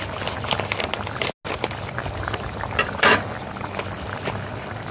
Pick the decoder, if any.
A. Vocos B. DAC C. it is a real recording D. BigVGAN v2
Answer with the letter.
C